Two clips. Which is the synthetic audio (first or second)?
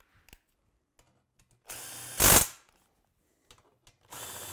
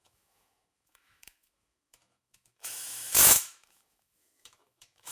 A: second